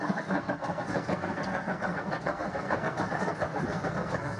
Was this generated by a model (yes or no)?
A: yes